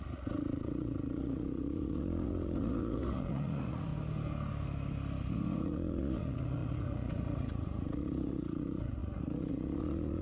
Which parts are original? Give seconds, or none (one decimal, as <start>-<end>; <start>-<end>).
3.9-5.3